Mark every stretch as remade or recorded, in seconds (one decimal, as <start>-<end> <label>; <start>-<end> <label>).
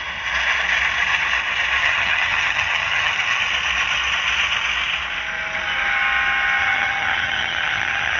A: 0.0-1.8 recorded; 1.8-3.4 remade; 3.4-6.6 recorded; 6.6-8.2 remade